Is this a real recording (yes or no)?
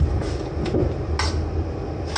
yes